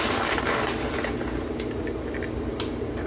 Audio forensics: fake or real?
real